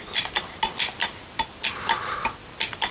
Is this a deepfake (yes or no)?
no